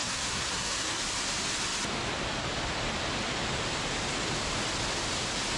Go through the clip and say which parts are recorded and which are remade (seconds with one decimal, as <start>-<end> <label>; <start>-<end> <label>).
0.0-1.0 remade; 1.0-5.6 recorded